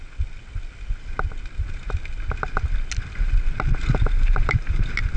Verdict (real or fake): real